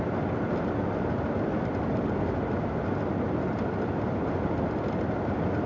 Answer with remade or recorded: recorded